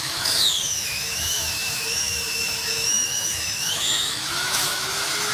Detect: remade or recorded remade